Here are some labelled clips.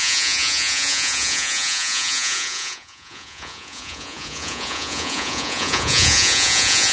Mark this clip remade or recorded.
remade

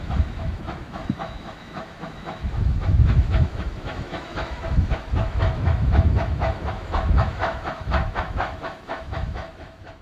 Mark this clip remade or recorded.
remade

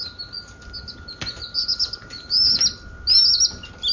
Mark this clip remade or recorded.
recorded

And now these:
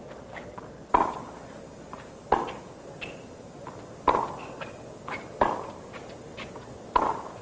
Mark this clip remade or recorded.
recorded